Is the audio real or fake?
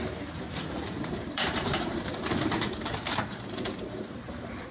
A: fake